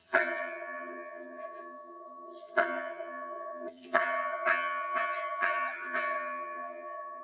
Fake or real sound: fake